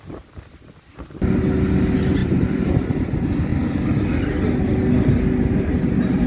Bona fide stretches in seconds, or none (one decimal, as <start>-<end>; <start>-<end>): 0.0-2.2; 3.0-6.3

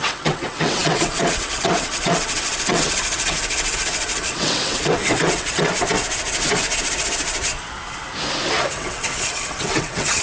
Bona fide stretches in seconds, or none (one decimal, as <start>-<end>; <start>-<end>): 5.7-8.7

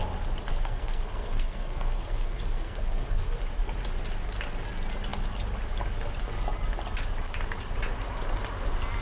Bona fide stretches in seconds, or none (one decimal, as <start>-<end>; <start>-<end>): 0.0-0.5; 3.4-9.0

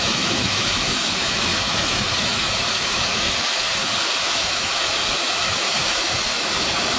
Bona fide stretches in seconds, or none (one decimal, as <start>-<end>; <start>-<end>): none

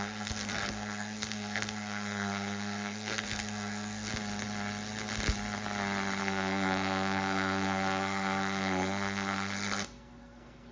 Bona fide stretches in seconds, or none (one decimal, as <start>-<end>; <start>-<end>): 4.1-6.2

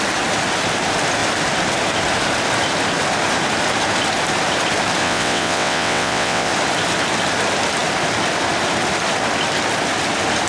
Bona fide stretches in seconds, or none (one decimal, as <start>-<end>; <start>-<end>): 0.0-5.0; 6.5-10.5

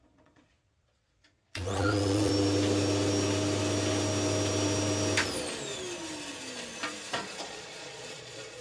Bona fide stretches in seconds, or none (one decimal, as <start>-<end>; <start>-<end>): 2.3-7.4